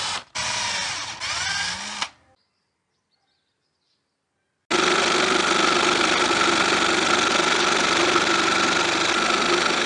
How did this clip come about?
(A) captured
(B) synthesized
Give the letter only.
A